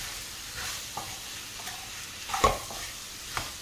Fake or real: real